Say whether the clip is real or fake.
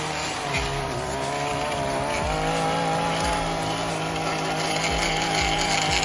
real